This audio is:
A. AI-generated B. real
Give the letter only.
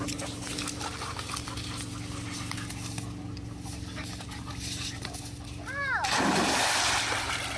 B